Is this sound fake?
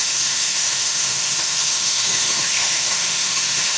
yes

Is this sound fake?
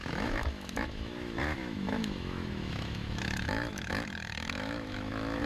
yes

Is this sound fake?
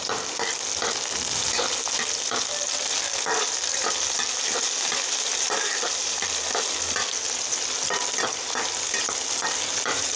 no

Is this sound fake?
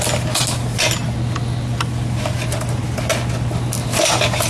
no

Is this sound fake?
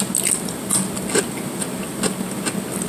no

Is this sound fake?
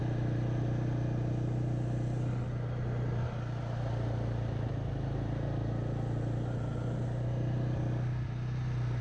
no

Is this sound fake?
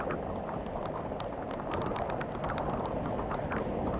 no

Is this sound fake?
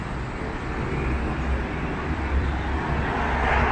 no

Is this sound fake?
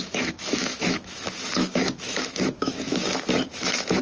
yes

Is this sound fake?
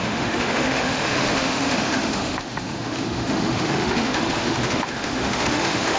yes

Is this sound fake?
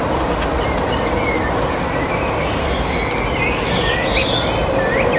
no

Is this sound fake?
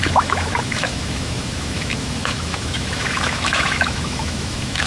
yes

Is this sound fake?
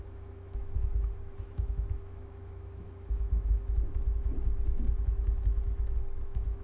yes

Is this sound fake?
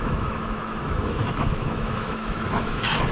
yes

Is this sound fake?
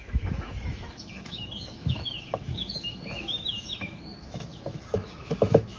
yes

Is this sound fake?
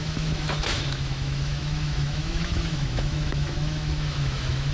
yes